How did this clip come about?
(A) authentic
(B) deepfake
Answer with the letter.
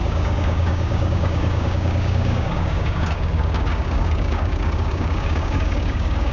B